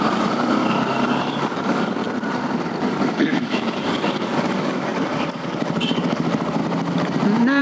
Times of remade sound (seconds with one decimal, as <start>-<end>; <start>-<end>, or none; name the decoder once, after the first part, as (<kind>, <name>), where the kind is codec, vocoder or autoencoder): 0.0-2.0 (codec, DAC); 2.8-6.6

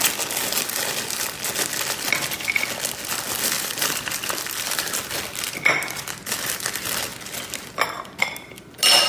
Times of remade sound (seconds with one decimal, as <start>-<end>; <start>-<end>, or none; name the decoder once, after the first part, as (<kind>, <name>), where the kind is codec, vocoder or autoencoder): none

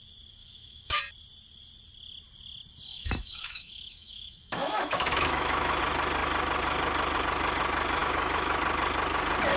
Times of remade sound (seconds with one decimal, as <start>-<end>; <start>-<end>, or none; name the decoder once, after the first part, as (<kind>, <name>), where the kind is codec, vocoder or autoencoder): 0.4-1.0 (autoencoder, DAC-VAE); 2.9-5.8; 8.0-8.6

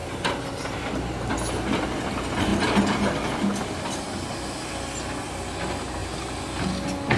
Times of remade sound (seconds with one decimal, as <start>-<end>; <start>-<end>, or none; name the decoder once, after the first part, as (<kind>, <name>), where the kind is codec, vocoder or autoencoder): 0.0-1.3 (vocoder, BigVGAN v2)

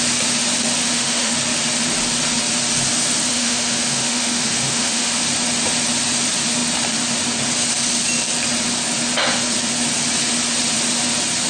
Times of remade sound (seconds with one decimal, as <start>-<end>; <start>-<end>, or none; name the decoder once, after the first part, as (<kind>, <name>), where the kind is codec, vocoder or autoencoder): 0.8-1.3 (autoencoder, DAC-VAE); 3.3-5.1

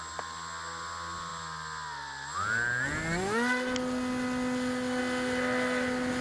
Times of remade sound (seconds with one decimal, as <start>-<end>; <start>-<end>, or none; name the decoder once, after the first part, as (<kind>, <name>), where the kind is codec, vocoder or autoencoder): none

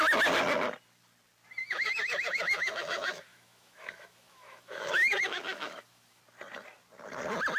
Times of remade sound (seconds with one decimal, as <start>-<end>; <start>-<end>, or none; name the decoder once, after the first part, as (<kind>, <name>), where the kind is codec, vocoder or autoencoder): 1.6-6.2 (autoencoder, DAC-VAE)